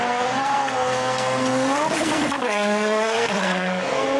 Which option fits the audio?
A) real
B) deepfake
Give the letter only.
B